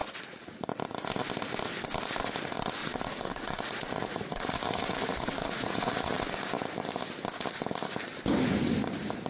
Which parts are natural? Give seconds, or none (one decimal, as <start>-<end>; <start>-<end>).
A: 0.6-2.8; 6.3-9.3